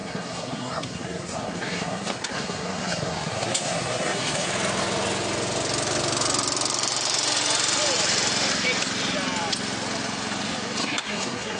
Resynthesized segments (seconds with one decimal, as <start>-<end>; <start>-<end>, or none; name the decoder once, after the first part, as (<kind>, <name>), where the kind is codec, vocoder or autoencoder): 0.0-4.5 (codec, SNAC); 10.8-11.6